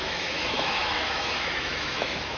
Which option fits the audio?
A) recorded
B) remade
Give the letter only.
B